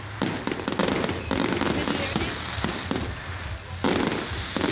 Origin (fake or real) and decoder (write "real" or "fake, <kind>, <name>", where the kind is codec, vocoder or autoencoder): real